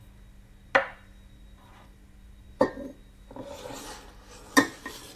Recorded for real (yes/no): yes